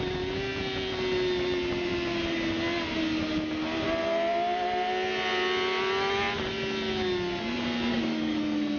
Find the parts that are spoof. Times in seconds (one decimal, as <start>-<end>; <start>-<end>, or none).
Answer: 7.9-8.4